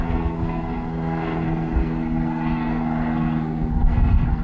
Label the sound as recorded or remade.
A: remade